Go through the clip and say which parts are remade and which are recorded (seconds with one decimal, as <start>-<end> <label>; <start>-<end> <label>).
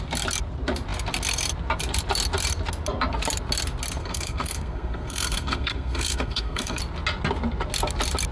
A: 0.0-4.0 recorded; 4.0-6.8 remade; 6.8-8.3 recorded